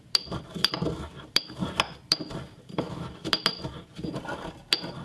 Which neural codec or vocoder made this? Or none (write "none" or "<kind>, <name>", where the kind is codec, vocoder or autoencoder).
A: vocoder, BigVGAN v2